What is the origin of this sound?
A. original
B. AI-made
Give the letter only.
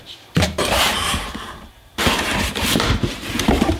B